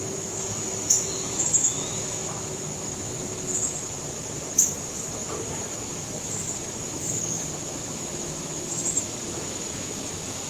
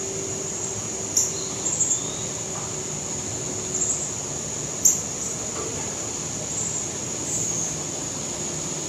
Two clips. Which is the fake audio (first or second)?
first